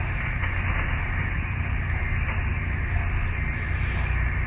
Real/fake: real